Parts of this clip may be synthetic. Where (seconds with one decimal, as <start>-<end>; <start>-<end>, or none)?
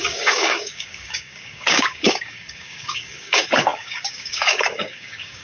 0.0-5.4